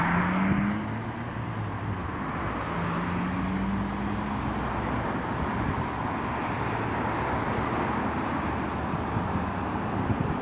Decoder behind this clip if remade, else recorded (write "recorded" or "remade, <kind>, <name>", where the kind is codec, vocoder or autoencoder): recorded